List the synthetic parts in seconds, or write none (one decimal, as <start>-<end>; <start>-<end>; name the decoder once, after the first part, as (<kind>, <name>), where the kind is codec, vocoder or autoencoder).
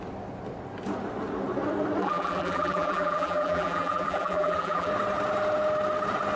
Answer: 2.0-4.9 (vocoder, BigVGAN v2)